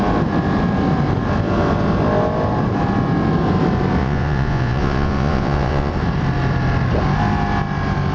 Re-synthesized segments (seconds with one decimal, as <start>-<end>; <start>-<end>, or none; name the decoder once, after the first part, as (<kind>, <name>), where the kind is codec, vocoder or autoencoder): 4.0-5.9 (vocoder, Vocos)

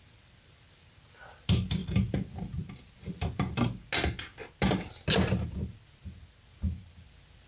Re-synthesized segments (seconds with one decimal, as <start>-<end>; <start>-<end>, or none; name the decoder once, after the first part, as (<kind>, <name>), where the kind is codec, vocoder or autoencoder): none

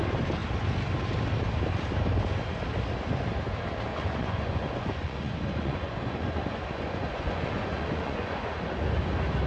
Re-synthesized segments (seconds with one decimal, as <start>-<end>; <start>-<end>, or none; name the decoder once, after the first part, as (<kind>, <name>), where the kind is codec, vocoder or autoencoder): 3.9-8.5 (vocoder, Vocos)

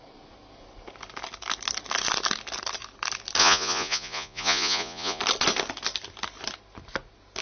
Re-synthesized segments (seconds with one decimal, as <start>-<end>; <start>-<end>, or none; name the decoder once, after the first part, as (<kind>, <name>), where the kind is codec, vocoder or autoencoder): 3.4-5.2 (vocoder, Vocos)

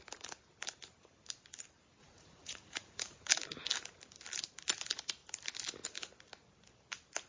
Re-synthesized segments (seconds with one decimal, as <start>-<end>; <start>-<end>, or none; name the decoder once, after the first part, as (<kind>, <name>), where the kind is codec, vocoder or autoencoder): 2.0-3.3 (vocoder, Vocos)